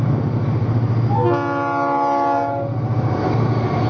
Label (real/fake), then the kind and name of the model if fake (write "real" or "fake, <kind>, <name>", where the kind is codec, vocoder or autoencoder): real